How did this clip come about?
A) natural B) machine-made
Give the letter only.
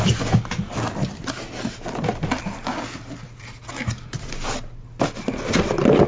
A